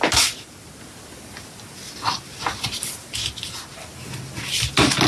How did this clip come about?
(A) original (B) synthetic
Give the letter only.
A